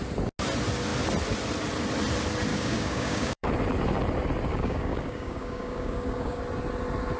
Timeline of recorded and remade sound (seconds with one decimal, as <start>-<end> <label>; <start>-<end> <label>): 0.0-2.5 recorded; 2.5-3.5 remade; 3.5-4.5 recorded; 4.5-6.4 remade; 6.4-7.2 recorded